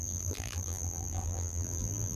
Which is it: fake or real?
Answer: fake